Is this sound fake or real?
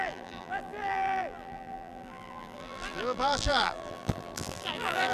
fake